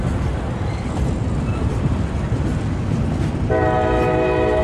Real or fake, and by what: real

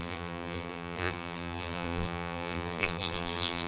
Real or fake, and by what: fake, vocoder, BigVGAN v2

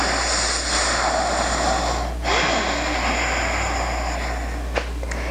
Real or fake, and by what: real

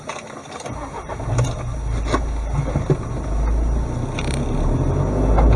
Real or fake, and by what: real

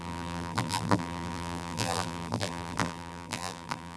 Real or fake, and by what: fake, vocoder, BigVGAN v2